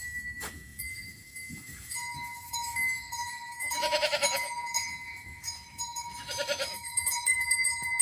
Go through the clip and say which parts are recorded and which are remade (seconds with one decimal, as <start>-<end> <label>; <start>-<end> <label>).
0.0-8.0 remade